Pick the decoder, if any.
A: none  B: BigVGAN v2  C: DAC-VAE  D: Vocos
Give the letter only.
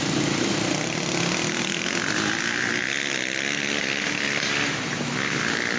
A